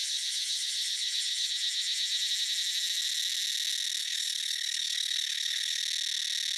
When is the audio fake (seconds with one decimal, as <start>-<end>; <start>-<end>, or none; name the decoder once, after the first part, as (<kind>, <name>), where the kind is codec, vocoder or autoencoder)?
0.0-1.5 (codec, HILCodec); 4.0-5.8